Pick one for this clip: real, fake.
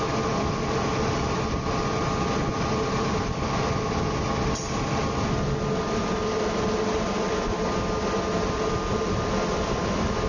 real